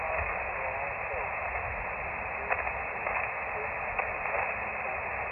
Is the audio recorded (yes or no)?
yes